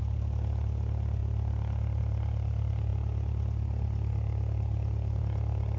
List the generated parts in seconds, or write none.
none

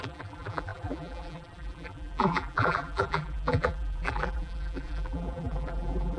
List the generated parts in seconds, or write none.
0.0-6.2 (vocoder, BigVGAN v2)

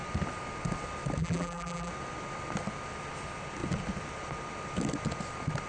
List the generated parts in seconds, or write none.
1.2-1.9 (vocoder, BigVGAN v2)

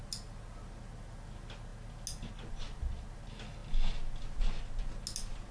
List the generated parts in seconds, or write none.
none